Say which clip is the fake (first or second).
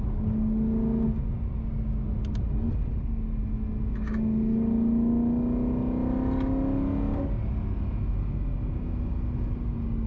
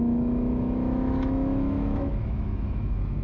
second